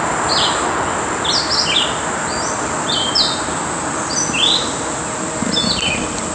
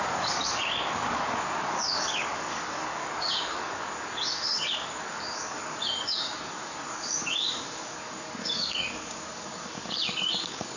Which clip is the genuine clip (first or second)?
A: first